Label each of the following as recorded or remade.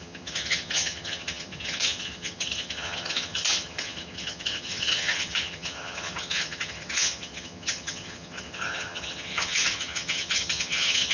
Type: remade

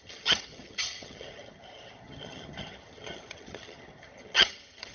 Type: remade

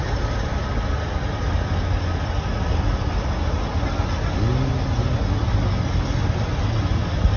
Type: recorded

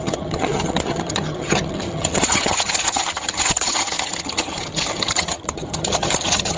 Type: remade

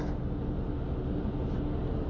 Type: recorded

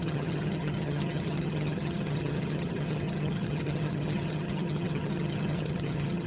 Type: remade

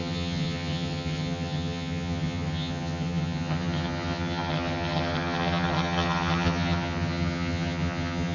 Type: remade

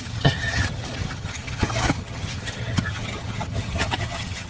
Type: remade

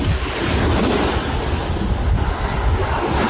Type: recorded